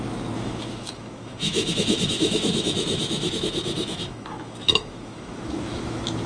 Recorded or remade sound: remade